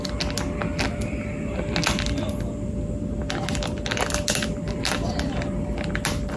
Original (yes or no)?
yes